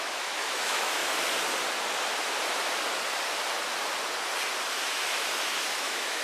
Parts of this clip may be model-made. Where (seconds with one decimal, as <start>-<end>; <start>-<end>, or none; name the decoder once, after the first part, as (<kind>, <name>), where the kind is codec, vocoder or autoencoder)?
0.0-1.0 (autoencoder, DAC-VAE); 4.7-6.2